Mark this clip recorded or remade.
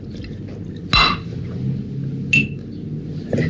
recorded